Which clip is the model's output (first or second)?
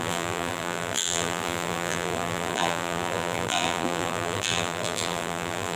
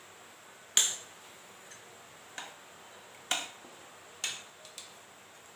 first